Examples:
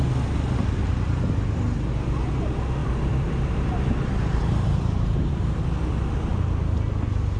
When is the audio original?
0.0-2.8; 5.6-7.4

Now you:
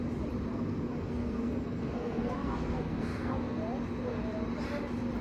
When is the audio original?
0.0-0.5; 3.6-5.2

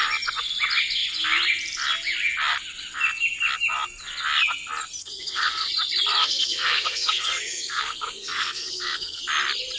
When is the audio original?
0.0-5.0; 5.7-6.2; 9.2-9.8

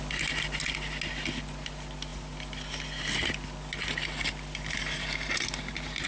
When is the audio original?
0.0-6.1

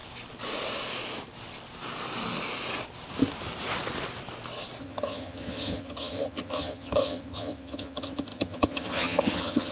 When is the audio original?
0.0-4.8

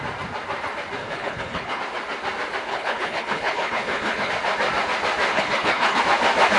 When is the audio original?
0.0-1.0; 1.8-2.7; 4.3-5.3; 6.0-6.6

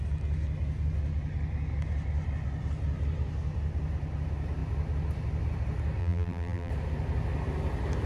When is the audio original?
0.0-6.0; 6.7-8.1

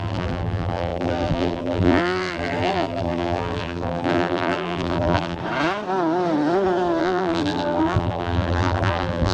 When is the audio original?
5.4-7.0